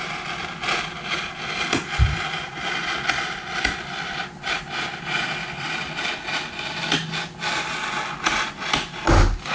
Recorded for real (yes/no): yes